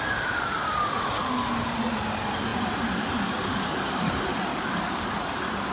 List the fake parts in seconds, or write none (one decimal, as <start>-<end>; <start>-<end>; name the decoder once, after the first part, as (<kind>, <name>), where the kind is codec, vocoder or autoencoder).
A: 1.2-1.7 (codec, DAC); 4.5-5.2